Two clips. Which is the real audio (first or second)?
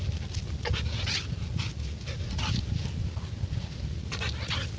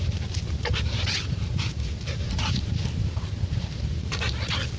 first